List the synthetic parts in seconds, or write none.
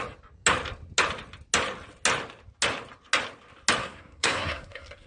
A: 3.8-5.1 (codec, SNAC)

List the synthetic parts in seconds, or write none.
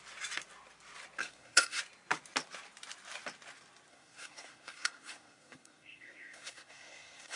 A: 1.2-1.8 (codec, SNAC); 3.9-7.4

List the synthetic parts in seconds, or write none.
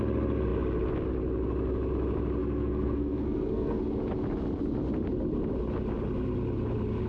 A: 2.4-3.8 (codec, SNAC)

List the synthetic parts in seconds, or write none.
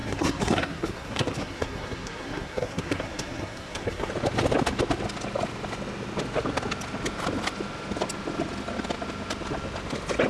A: 0.0-4.1 (codec, SNAC)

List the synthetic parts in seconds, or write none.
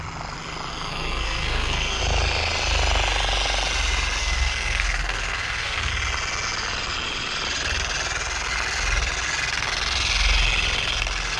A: 0.7-2.0 (codec, SNAC); 4.2-5.9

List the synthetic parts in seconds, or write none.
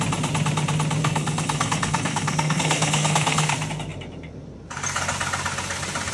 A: 1.0-3.5 (codec, SNAC)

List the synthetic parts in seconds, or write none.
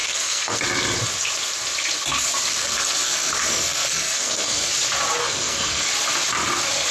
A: 0.0-0.6 (codec, SNAC); 2.5-4.7; 5.2-5.9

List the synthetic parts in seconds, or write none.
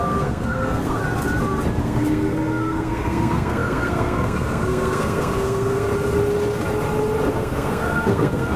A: 0.0-1.0 (codec, SNAC); 1.8-5.9; 7.3-8.6